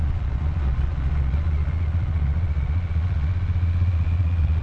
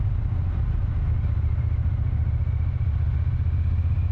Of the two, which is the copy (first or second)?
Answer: first